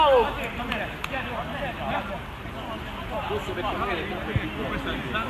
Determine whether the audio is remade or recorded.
recorded